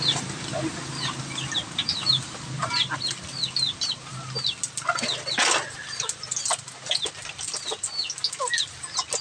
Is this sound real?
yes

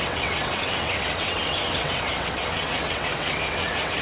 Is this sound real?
no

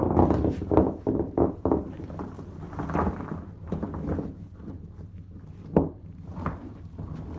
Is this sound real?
yes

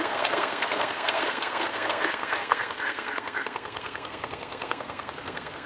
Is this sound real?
no